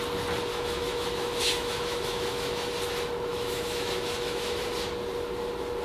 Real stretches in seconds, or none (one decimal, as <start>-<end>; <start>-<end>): 0.0-0.5; 2.7-3.3; 4.6-5.8